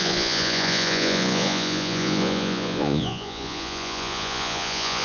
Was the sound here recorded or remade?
remade